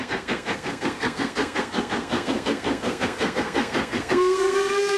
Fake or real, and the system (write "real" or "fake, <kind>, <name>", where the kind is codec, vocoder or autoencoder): fake, codec, SNAC